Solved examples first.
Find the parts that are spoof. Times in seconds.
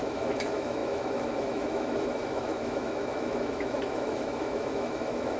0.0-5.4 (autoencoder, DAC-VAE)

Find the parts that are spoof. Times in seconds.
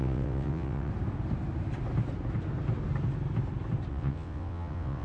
0.0-0.9 (vocoder, WaveNeXt); 3.9-5.0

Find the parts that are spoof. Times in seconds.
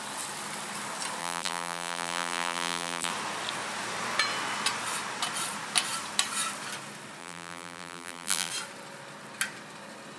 1.2-3.1 (vocoder, BigVGAN v2); 7.2-8.5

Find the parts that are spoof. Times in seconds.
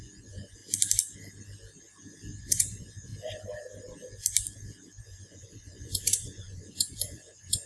0.0-0.6 (vocoder, Vocos); 2.4-3.1; 5.0-7.7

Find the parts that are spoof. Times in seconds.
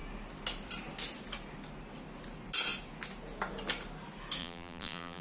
4.4-5.2 (vocoder, BigVGAN v2)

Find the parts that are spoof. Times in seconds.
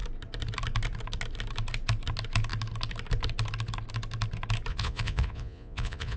4.7-6.2 (vocoder, Vocos)